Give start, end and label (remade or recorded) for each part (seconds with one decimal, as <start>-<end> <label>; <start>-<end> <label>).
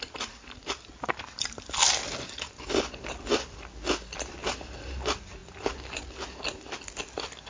0.0-7.5 recorded